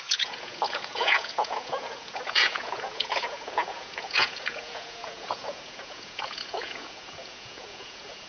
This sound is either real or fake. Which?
fake